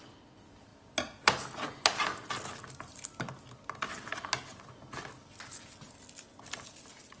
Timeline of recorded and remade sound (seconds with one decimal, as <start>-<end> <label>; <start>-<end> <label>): 0.0-7.2 recorded